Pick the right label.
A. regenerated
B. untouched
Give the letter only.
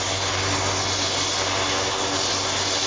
B